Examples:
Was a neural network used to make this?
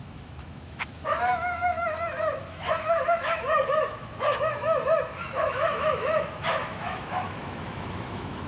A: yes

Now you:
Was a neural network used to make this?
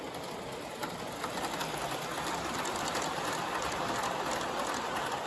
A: no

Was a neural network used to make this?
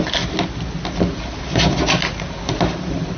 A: no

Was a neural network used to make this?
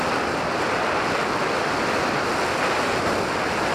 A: no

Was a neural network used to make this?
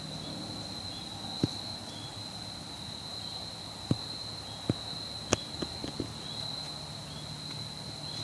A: no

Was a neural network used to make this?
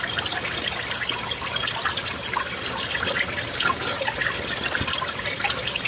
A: no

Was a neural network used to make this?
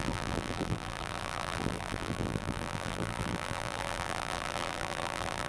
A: yes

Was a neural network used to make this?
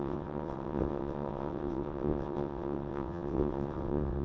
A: yes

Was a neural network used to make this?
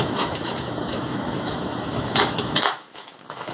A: yes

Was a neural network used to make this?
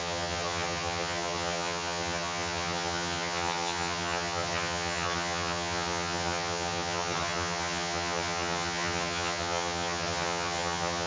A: yes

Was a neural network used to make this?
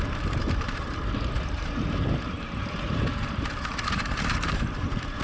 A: yes